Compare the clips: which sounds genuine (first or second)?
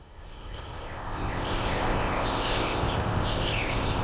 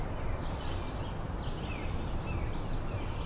second